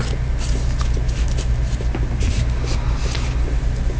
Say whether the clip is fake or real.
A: real